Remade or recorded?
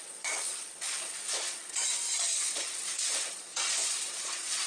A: remade